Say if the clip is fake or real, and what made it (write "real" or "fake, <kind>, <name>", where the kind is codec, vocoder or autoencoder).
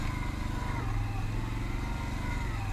real